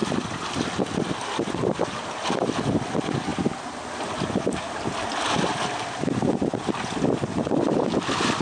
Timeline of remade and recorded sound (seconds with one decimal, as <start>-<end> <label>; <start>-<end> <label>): 0.0-8.4 recorded